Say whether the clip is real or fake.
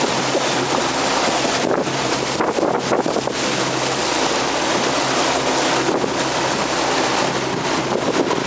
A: real